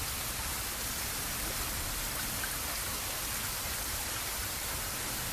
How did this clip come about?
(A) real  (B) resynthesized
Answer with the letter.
A